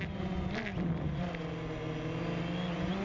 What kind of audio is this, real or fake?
real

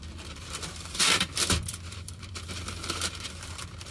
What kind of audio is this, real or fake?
fake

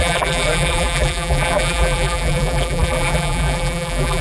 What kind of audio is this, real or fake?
fake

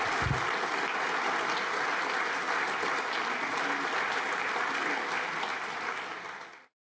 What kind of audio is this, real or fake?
real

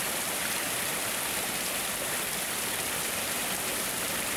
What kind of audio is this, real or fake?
fake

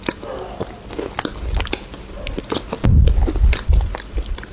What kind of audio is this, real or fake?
real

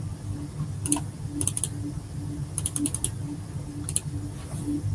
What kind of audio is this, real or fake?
real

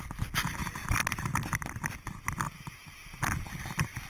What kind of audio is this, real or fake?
real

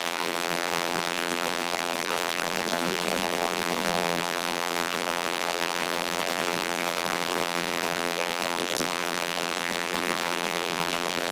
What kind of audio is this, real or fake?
fake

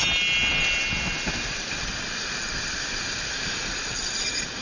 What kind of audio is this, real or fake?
fake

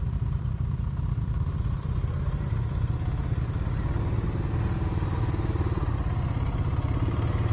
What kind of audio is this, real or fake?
real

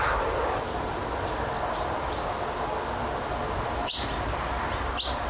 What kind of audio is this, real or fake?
real